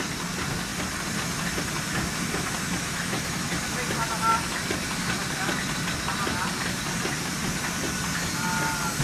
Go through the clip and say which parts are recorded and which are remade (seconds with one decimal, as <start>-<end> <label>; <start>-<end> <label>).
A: 0.0-2.8 recorded; 2.8-3.6 remade; 3.6-9.0 recorded